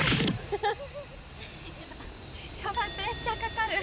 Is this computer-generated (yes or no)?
no